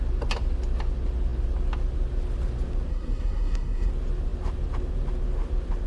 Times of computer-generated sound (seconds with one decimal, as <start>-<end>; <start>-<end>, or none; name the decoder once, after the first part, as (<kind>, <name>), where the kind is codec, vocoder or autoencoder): 2.9-3.9 (codec, SNAC)